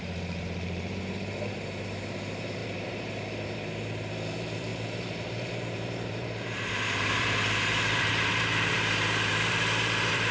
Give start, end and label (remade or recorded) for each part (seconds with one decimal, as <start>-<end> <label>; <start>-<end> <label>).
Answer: 0.0-10.3 remade